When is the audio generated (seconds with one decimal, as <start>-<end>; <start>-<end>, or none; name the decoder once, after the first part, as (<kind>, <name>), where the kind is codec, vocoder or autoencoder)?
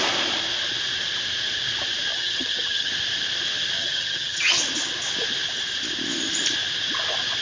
2.1-2.9 (vocoder, HiFi-GAN); 3.8-4.6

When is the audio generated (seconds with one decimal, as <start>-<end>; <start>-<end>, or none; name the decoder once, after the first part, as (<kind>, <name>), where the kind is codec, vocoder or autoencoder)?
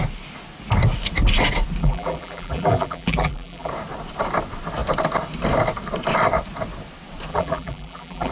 1.8-3.7 (vocoder, BigVGAN v2); 7.3-8.3